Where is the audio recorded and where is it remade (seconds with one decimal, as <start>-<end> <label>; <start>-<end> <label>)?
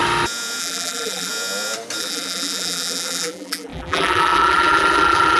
0.0-0.6 recorded; 0.6-1.3 remade; 1.3-2.0 recorded; 2.0-5.4 remade